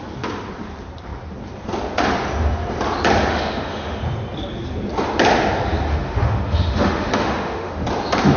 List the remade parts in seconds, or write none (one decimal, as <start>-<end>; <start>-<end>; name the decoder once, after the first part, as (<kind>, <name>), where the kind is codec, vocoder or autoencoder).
3.3-4.0 (autoencoder, DAC-VAE); 5.9-7.7